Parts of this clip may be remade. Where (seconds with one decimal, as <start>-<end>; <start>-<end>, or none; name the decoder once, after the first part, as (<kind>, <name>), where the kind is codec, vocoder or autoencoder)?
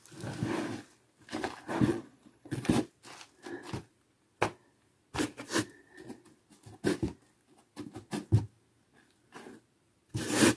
1.9-2.7 (vocoder, Vocos)